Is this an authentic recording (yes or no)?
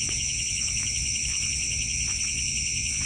no